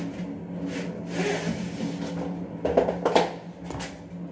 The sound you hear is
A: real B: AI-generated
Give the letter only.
A